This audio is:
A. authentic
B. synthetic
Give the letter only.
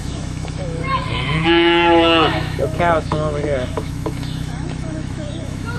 B